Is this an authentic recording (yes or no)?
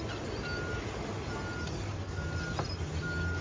yes